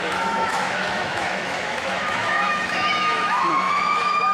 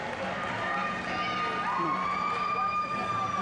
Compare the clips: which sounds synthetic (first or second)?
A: first